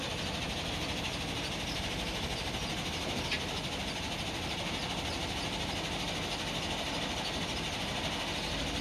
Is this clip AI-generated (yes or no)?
no